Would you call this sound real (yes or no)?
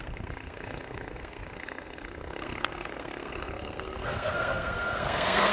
no